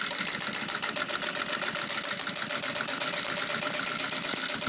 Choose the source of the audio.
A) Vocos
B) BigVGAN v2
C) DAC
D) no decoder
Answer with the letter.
D